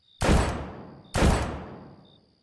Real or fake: real